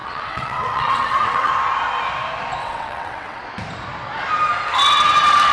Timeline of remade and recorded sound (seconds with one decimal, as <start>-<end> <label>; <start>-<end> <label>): 0.0-1.5 remade; 1.5-2.6 recorded; 2.6-3.4 remade; 3.4-5.5 recorded